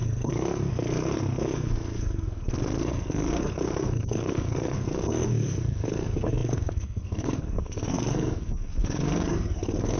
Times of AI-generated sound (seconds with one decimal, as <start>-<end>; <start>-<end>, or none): 0.0-10.0